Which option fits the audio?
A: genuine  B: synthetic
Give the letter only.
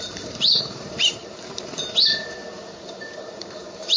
B